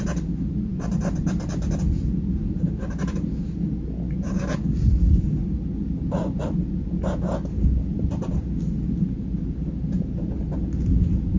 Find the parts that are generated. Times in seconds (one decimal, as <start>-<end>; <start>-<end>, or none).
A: none